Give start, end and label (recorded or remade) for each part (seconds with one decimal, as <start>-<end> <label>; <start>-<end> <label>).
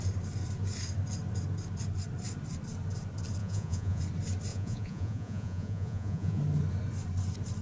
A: 0.0-3.4 recorded; 3.4-4.0 remade; 4.0-4.5 recorded; 4.5-6.4 remade; 6.4-7.6 recorded